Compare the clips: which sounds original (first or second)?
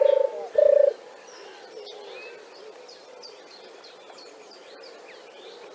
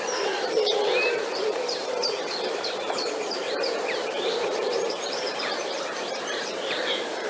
first